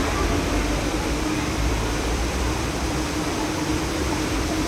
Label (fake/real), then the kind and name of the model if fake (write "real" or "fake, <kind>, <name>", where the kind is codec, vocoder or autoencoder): fake, vocoder, BigVGAN v2